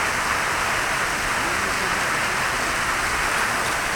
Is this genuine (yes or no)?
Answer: yes